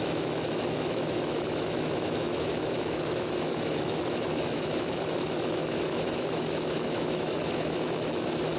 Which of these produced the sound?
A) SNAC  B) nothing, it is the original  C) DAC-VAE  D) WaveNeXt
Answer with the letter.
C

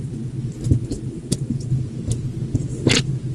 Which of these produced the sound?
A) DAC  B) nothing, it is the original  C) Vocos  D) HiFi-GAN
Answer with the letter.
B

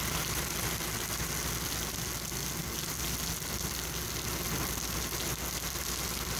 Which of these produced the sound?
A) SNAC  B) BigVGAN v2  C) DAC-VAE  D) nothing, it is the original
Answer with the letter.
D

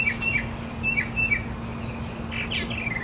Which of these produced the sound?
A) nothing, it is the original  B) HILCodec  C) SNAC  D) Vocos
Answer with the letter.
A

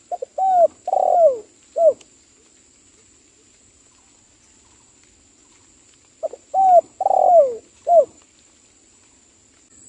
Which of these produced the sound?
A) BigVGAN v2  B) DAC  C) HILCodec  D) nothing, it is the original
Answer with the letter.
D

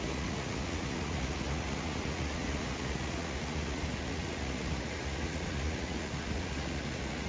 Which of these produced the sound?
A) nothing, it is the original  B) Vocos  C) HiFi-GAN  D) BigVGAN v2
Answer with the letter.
B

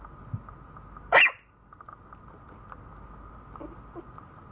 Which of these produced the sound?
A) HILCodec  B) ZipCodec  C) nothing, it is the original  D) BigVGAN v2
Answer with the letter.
C